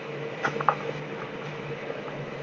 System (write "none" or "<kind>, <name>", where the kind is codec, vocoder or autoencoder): autoencoder, DAC-VAE